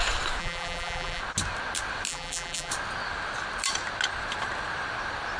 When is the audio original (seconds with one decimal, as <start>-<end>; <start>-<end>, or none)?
0.0-0.4; 1.2-2.1; 2.7-5.4